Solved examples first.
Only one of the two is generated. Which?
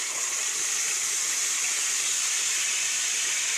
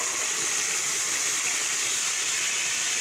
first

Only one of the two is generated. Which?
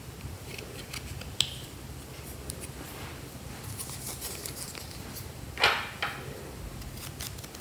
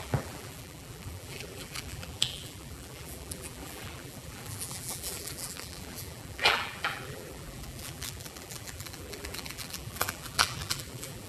second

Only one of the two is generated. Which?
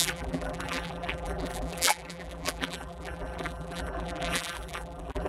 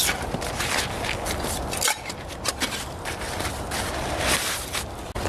first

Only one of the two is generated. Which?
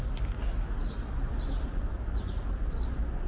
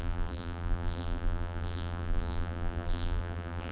second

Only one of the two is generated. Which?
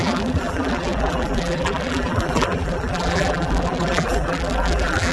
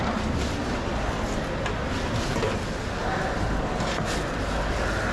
first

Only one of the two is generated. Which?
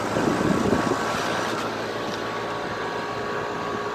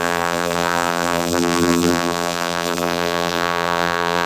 second